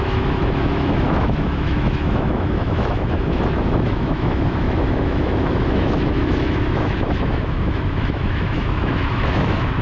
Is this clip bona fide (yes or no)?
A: no